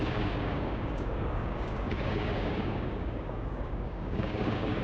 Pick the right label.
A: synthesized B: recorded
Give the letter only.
A